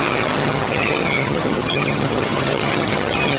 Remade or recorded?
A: remade